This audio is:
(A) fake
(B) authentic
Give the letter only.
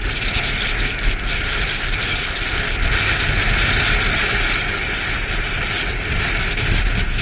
B